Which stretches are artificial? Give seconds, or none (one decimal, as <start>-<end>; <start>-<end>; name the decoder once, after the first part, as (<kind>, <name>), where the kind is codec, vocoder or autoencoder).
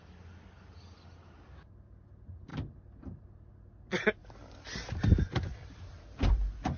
2.5-3.5 (vocoder, BigVGAN v2); 4.2-6.3